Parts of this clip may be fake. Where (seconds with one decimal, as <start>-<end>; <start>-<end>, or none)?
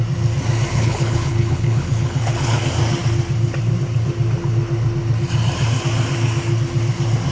0.7-2.6